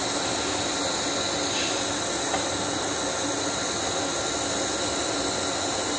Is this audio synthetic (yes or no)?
no